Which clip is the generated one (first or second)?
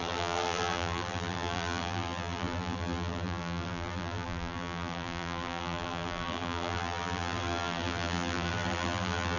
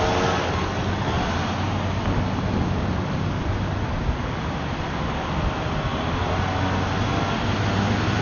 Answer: first